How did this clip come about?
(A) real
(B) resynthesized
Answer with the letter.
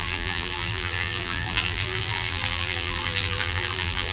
B